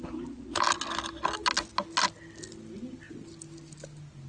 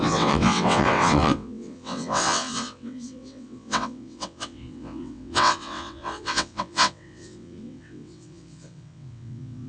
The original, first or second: first